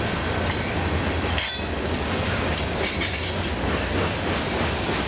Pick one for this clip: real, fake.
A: real